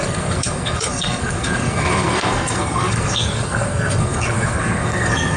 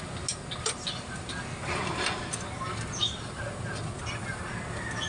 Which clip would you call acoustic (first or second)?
second